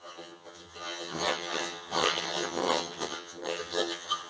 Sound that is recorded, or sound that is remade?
remade